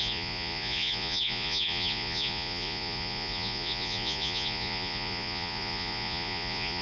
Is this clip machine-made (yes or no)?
yes